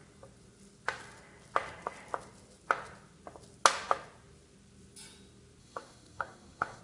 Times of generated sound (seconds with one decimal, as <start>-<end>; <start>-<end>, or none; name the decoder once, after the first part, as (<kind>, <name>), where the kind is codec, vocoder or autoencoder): 5.6-6.8 (codec, SNAC)